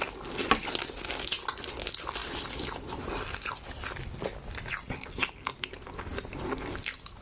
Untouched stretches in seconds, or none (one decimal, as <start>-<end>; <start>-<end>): 0.0-7.2